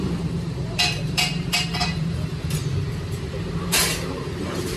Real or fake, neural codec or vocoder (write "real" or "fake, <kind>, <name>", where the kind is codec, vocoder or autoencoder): fake, vocoder, BigVGAN v2